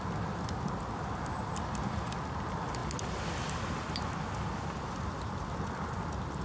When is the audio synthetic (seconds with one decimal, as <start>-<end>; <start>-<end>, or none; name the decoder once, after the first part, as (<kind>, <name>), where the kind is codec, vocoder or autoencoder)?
none